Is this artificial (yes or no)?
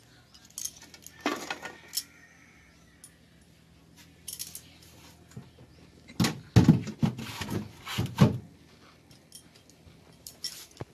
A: no